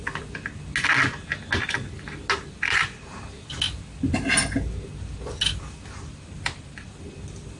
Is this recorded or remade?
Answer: recorded